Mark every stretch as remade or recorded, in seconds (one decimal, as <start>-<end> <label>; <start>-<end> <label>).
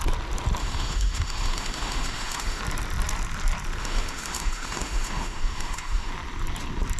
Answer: 0.0-0.6 recorded; 0.6-2.6 remade; 2.6-3.8 recorded; 3.8-6.1 remade; 6.1-7.0 recorded